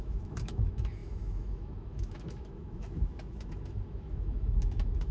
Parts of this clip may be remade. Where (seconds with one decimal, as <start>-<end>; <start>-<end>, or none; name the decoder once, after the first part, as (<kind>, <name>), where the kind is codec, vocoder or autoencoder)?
0.0-5.1 (autoencoder, DAC-VAE)